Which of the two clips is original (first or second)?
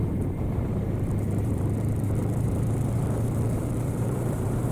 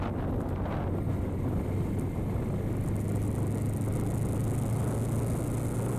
second